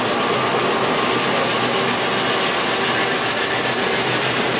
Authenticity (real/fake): real